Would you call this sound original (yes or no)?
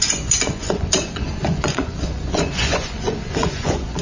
no